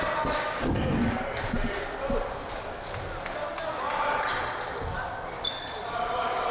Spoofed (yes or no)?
no